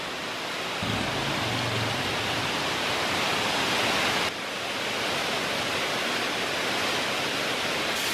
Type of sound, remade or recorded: recorded